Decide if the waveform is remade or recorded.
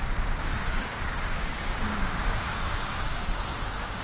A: remade